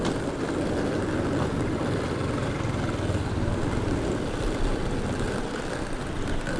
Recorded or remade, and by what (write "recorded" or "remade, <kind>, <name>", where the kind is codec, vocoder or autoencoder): recorded